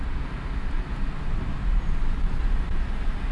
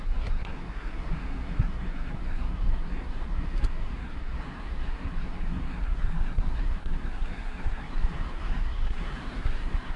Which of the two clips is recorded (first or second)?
first